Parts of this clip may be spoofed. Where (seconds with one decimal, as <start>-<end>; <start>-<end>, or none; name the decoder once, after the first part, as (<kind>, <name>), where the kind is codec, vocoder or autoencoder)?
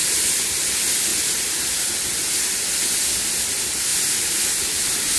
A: 0.6-1.1 (vocoder, BigVGAN v2); 2.4-3.9; 4.6-5.2